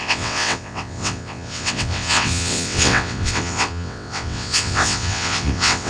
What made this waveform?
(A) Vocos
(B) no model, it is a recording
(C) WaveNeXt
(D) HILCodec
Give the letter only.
C